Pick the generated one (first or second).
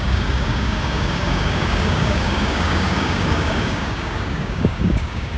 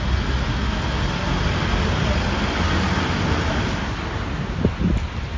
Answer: first